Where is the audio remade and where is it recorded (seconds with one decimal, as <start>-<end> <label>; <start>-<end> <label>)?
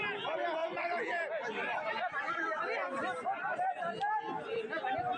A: 0.0-0.6 recorded; 0.6-3.7 remade; 3.7-5.2 recorded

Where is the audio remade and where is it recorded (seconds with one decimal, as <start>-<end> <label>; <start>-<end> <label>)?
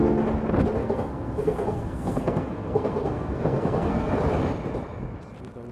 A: 0.0-0.8 recorded; 0.8-4.2 remade; 4.2-5.7 recorded